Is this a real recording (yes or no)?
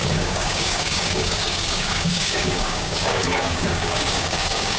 no